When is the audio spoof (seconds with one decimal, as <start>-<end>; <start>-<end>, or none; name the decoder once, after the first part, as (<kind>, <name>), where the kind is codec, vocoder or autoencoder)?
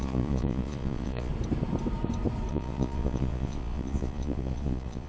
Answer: 0.0-1.3 (vocoder, Vocos); 2.5-5.1